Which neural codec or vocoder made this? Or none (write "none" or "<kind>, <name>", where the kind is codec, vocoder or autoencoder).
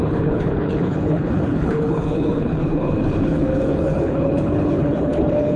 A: codec, HILCodec